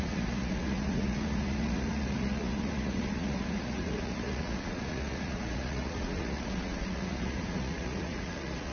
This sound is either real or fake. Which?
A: fake